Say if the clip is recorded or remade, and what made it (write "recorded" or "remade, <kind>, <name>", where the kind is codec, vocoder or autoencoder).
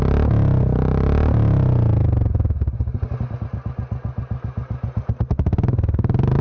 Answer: recorded